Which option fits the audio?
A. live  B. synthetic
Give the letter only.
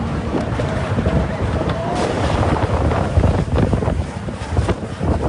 B